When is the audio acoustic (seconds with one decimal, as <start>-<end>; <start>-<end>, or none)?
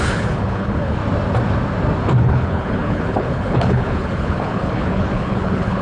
1.0-2.2